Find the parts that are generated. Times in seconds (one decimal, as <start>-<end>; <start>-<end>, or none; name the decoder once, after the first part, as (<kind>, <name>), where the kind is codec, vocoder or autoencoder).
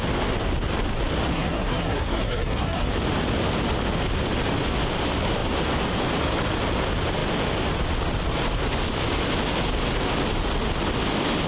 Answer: 1.3-2.9 (codec, SNAC)